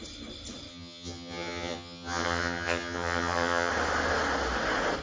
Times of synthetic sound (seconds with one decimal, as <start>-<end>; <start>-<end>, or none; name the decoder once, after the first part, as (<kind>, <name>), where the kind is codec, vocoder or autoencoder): 0.7-3.7 (vocoder, HiFi-GAN)